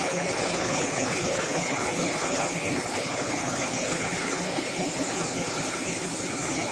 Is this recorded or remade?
remade